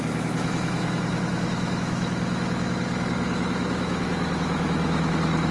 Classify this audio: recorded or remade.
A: remade